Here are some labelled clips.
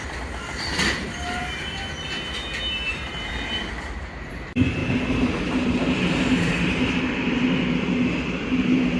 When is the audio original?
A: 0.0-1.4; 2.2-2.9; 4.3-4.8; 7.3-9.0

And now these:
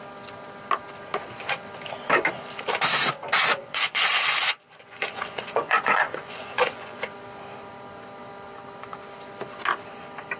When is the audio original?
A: 0.0-3.5; 7.0-10.4

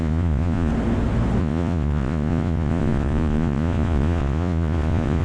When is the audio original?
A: 0.7-1.4

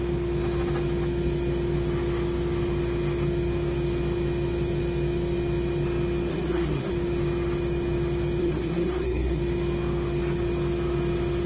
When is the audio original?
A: 0.0-6.3; 6.9-8.4; 9.4-11.5

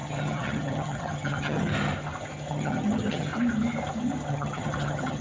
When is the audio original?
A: 1.7-2.5; 3.3-4.3

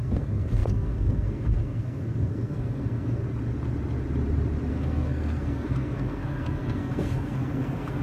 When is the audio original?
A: 3.2-4.7

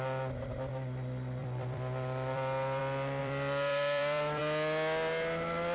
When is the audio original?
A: 0.0-1.4; 2.8-3.2; 4.4-5.7